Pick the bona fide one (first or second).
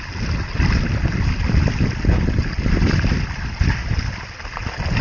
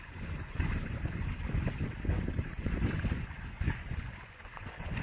first